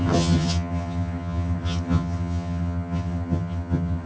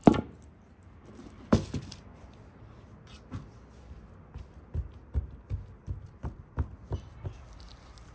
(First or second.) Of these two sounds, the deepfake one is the first